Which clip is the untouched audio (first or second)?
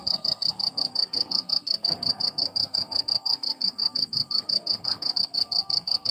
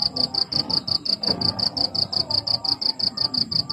second